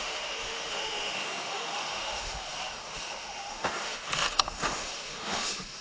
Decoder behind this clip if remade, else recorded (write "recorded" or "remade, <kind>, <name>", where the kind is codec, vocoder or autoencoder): remade, autoencoder, DAC-VAE